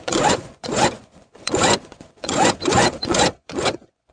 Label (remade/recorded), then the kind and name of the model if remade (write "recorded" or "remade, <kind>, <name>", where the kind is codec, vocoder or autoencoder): remade, vocoder, Vocos